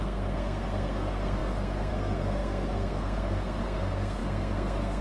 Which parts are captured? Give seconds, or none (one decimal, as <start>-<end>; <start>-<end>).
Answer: none